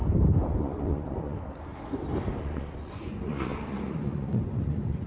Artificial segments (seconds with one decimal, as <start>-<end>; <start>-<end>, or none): 0.6-1.7; 2.4-5.1